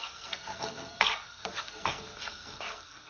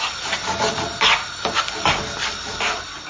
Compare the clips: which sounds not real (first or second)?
first